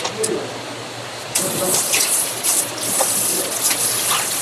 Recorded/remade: recorded